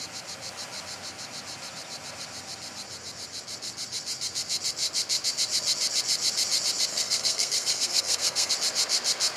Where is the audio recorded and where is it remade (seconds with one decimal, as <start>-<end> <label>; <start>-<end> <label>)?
0.0-6.9 recorded; 6.9-8.5 remade; 8.5-9.4 recorded